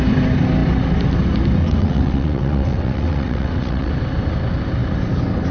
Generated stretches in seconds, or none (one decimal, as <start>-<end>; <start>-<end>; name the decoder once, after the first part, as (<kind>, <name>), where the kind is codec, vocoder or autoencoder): 1.6-3.9 (vocoder, WaveNeXt)